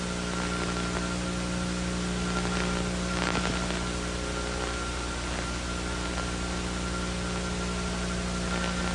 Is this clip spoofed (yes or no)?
no